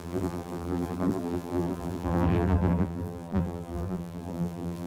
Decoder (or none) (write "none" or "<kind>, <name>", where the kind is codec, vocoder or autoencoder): vocoder, BigVGAN v2